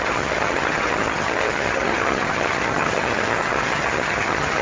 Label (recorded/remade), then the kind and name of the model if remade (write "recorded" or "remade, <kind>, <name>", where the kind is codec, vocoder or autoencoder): remade, vocoder, HiFi-GAN